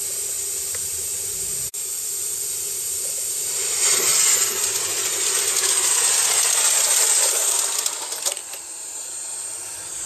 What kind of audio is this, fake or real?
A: real